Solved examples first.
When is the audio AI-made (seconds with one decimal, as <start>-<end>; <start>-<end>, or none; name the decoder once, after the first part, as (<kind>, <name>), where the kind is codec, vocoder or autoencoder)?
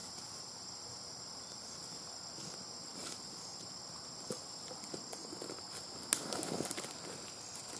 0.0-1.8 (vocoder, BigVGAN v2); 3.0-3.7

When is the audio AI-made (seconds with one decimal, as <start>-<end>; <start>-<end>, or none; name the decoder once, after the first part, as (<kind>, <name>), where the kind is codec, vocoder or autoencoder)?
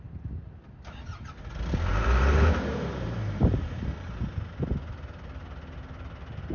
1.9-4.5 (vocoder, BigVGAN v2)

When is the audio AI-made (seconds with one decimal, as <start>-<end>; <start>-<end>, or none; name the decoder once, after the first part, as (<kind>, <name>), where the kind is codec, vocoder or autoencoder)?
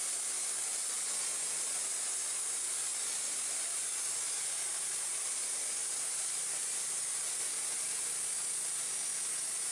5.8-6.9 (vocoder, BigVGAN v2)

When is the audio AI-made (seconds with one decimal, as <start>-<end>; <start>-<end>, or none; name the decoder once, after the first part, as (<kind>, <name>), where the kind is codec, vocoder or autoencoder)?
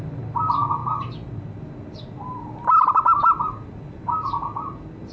none